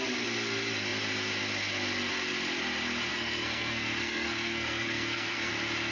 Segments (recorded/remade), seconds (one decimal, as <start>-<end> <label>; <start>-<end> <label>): 0.0-3.1 recorded; 3.1-5.5 remade; 5.5-5.9 recorded